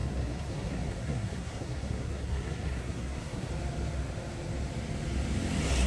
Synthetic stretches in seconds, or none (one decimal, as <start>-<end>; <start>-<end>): 0.0-3.5